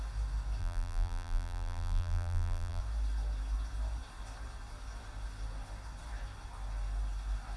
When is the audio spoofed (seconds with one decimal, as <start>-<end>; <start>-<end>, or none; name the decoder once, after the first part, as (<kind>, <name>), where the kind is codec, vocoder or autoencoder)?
0.6-2.8 (vocoder, BigVGAN v2)